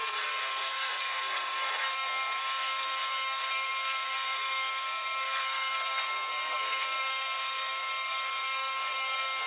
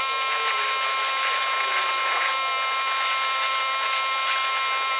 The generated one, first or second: first